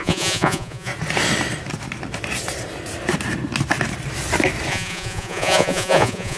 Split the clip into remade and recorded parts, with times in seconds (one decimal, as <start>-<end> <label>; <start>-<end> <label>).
0.0-0.9 remade; 0.9-4.7 recorded; 4.7-6.4 remade